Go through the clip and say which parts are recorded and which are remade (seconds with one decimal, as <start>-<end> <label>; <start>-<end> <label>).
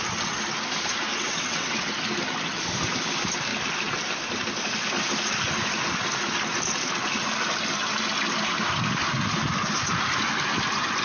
0.0-1.1 recorded; 1.1-1.9 remade; 1.9-11.0 recorded